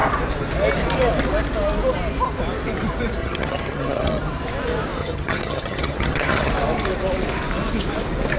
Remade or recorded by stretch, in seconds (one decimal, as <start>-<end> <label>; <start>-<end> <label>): 0.0-3.2 recorded; 3.2-4.2 remade; 4.2-5.0 recorded; 5.0-6.5 remade; 6.5-8.4 recorded